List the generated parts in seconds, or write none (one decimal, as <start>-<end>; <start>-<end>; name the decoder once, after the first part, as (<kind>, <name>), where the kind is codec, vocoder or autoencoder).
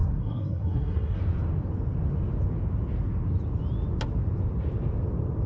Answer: 0.0-1.2 (codec, SNAC)